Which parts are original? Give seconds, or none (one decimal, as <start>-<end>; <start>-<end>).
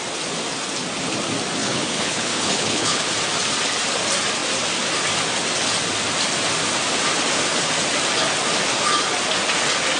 0.0-1.6; 3.1-10.0